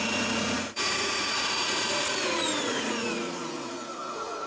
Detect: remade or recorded remade